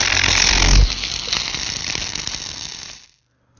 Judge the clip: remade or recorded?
recorded